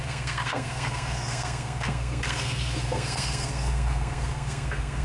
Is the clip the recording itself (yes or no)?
no